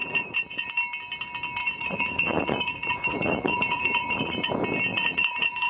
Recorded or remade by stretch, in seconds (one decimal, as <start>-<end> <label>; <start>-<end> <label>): 0.0-0.7 remade; 0.7-1.6 recorded; 1.6-4.5 remade; 4.5-4.9 recorded; 4.9-5.7 remade